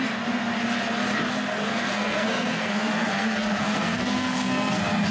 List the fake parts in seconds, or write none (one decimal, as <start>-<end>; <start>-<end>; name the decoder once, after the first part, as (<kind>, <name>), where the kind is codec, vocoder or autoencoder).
1.7-5.1 (codec, SNAC)